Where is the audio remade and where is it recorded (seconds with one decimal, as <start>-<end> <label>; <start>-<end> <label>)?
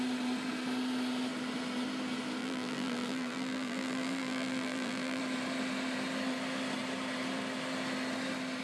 0.0-2.4 recorded; 2.4-5.2 remade; 5.2-8.6 recorded